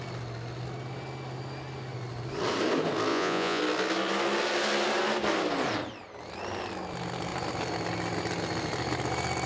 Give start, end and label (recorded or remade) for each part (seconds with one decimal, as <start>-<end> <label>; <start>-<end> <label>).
0.0-3.1 recorded; 3.1-3.6 remade; 3.6-9.5 recorded